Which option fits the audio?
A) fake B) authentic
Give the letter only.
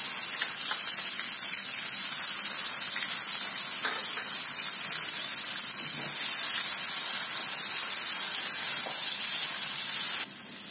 B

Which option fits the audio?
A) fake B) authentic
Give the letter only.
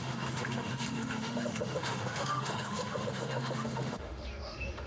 A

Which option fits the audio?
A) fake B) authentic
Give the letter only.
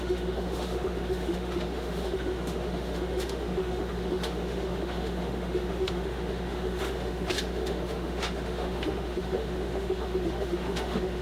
A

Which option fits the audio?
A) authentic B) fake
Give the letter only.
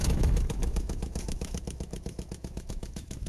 B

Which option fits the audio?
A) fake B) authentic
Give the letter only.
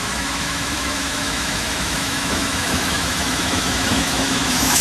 A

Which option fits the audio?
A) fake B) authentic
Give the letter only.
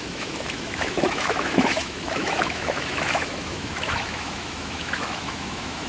A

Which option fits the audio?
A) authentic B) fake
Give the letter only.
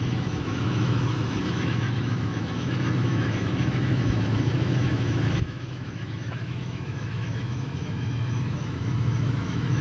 B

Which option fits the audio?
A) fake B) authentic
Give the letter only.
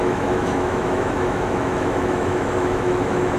A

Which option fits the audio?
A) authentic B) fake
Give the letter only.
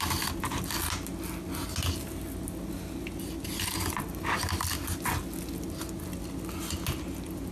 A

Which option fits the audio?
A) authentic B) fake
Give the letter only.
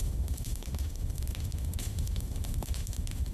B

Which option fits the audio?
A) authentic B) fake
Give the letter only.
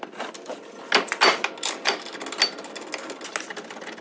A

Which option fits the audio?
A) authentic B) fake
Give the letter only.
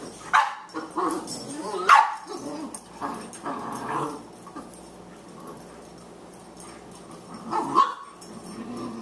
A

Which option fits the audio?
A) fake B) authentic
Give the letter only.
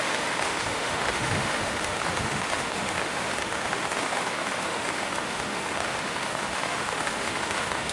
A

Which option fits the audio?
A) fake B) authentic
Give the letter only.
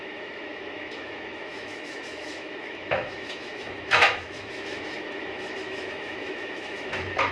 A